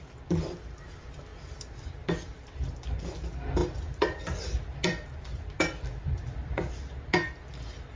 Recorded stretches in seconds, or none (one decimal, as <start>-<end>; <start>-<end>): 1.3-1.9